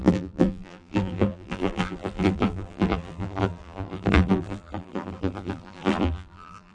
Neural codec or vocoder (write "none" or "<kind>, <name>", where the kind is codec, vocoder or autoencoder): vocoder, BigVGAN v2